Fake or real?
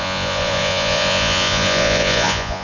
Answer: fake